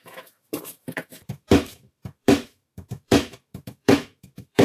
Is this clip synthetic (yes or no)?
yes